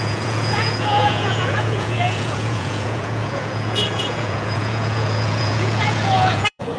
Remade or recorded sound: remade